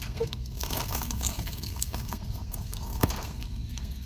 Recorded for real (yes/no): no